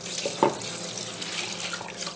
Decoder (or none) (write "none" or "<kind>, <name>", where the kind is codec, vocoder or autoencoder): none